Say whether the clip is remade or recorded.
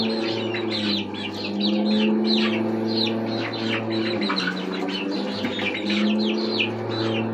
recorded